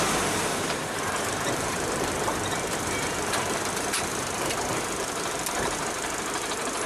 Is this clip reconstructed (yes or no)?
yes